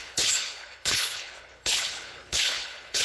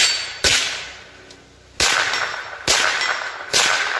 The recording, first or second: second